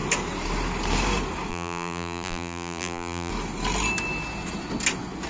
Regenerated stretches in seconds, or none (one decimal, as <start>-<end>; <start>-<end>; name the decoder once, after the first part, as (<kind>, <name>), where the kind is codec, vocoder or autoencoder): 1.5-3.3 (vocoder, BigVGAN v2)